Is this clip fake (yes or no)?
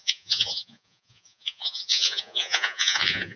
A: yes